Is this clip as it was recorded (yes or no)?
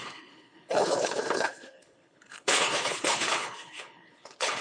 no